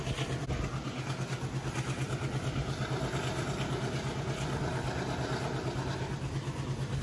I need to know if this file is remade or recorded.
recorded